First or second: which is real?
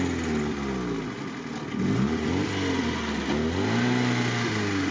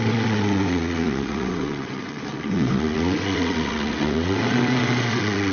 first